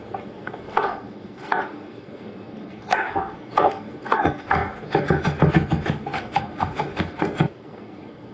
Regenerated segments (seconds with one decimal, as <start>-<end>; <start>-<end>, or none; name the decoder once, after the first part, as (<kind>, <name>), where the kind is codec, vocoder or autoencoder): 0.0-8.3 (codec, SNAC)